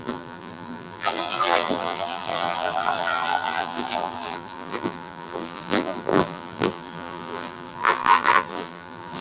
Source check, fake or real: fake